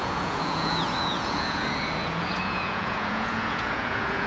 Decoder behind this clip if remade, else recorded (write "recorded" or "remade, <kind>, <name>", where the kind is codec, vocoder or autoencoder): remade, vocoder, Vocos